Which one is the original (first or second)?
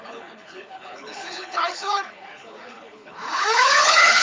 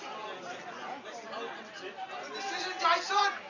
second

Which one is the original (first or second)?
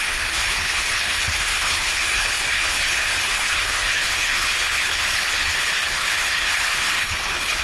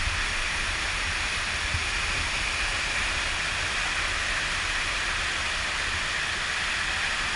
second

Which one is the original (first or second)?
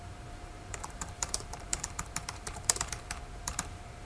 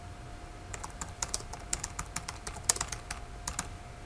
second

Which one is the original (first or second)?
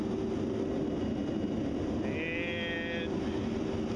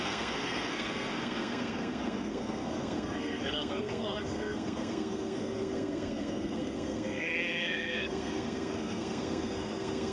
first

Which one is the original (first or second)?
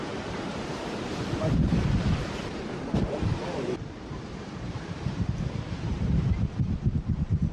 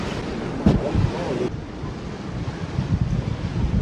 second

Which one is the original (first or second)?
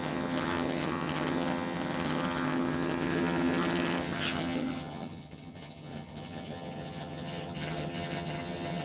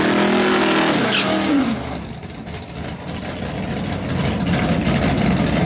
second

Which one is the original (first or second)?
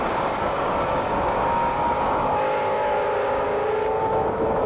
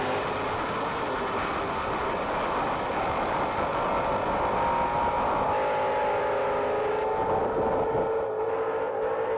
second